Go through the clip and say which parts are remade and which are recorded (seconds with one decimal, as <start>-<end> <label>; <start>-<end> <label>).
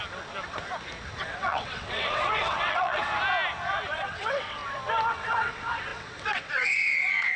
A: 0.0-1.2 recorded; 1.2-3.0 remade; 3.0-3.9 recorded; 3.9-4.6 remade; 4.6-5.1 recorded; 5.1-7.4 remade